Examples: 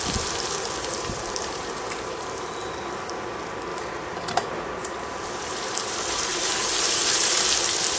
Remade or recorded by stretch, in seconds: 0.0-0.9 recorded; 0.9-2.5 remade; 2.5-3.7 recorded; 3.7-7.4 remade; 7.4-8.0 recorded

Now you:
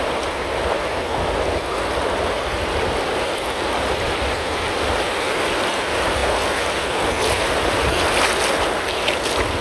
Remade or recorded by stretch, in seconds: 0.0-9.6 recorded

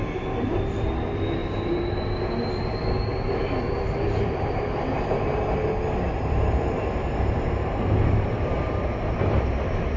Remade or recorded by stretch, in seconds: 0.0-1.4 recorded; 1.4-1.9 remade; 1.9-3.1 recorded; 3.1-5.1 remade; 5.1-6.1 recorded; 6.1-9.2 remade; 9.2-10.0 recorded

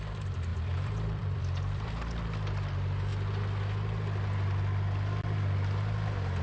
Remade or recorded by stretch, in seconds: 0.0-3.1 remade; 3.1-6.4 recorded

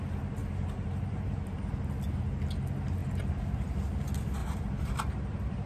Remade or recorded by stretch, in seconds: 0.0-0.4 recorded; 0.4-1.7 remade; 1.7-3.0 recorded; 3.0-3.8 remade; 3.8-4.4 recorded; 4.4-5.7 remade

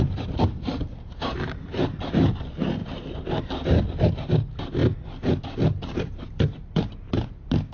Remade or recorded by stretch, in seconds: 0.0-4.8 remade; 4.8-5.4 recorded; 5.4-7.7 remade

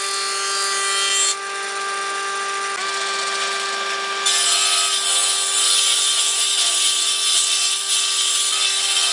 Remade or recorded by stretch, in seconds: 0.0-9.1 recorded